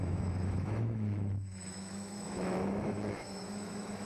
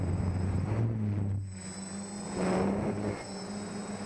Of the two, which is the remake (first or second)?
first